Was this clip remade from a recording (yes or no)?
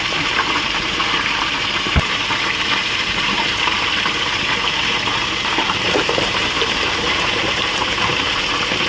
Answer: yes